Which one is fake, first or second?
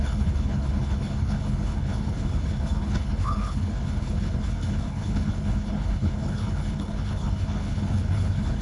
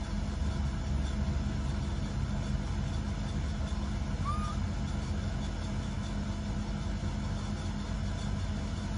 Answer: first